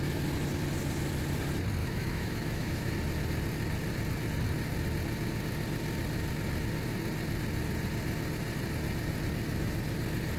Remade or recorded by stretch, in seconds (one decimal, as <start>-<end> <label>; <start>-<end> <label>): 0.0-1.8 recorded; 1.8-2.9 remade; 2.9-10.4 recorded